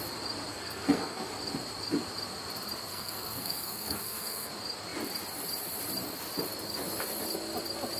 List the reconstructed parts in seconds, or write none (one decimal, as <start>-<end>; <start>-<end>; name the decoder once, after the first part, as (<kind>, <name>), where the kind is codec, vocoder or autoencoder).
0.5-1.3 (codec, SNAC); 2.9-4.5